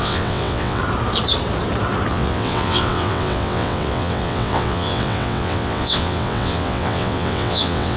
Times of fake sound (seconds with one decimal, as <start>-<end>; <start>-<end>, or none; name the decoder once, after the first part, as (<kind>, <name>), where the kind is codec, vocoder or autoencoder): 0.0-0.8 (vocoder, WaveNeXt); 2.1-8.0